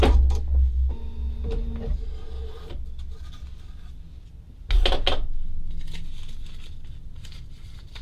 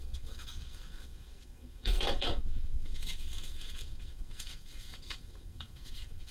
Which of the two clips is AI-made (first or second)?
second